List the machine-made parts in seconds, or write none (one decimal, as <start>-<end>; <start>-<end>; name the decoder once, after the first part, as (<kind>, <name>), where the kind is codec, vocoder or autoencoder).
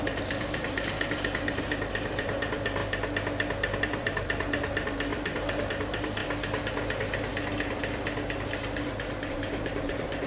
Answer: 0.0-2.8 (vocoder, BigVGAN v2); 3.8-6.2; 9.3-10.3